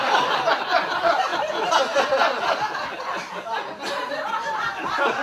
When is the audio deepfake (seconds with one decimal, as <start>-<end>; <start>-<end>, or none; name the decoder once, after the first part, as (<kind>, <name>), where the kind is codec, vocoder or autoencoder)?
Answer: none